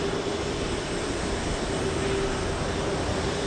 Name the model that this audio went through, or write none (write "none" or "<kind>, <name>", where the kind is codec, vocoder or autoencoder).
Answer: none